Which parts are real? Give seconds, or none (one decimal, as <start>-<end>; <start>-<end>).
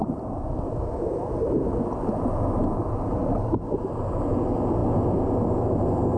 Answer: 0.0-6.2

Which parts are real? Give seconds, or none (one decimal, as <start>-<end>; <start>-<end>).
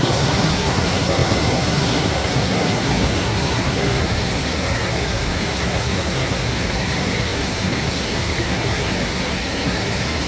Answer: none